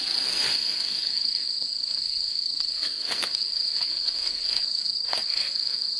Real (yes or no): no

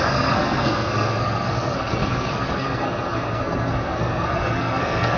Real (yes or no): no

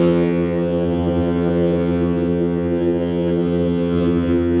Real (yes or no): no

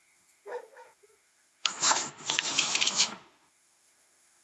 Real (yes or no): no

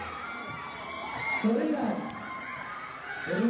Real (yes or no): no